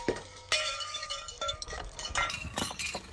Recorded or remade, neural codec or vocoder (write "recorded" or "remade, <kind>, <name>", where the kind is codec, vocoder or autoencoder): remade, codec, DAC